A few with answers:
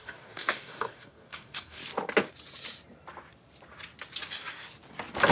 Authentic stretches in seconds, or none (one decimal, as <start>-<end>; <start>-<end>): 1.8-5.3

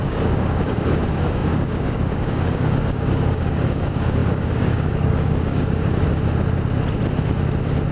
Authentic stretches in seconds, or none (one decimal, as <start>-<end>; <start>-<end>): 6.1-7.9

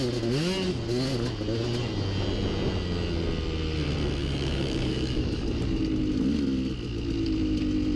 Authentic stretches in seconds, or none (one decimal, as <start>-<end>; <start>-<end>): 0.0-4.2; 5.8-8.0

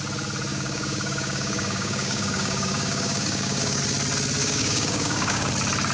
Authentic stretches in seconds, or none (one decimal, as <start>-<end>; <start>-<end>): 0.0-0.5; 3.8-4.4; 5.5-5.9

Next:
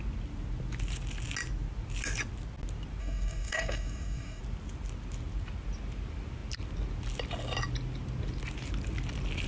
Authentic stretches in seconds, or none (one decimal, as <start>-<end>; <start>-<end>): 0.0-3.0; 4.4-9.5